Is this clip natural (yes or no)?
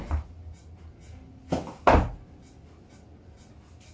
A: yes